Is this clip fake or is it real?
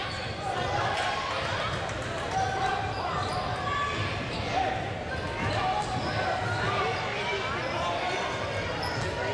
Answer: real